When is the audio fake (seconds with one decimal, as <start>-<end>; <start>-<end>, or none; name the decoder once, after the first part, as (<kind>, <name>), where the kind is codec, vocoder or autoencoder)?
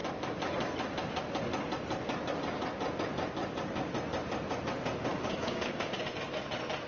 5.1-6.0 (codec, DAC)